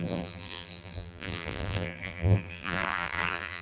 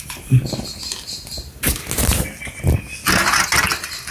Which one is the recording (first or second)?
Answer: second